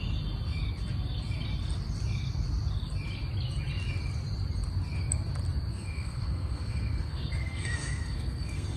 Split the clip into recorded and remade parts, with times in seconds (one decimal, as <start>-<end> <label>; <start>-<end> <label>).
0.0-5.7 recorded; 5.7-8.8 remade